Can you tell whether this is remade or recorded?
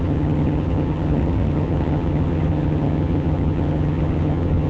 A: remade